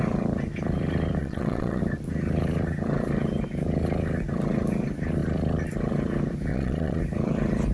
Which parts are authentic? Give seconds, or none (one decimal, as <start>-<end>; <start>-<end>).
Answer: 0.0-1.2; 1.8-6.5; 7.0-7.7

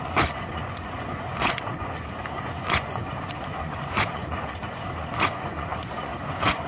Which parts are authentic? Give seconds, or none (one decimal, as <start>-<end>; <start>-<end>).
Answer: none

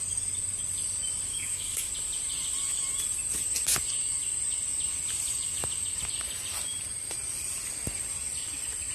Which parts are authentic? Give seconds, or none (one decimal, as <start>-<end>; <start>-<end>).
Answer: 0.0-1.3; 1.9-8.9

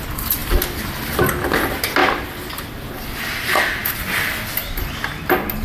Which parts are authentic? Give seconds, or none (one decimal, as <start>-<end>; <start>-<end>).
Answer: 0.0-5.6

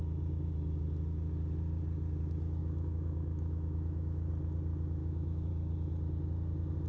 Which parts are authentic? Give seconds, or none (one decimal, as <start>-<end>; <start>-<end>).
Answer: 0.0-2.6; 4.3-5.0; 5.5-6.9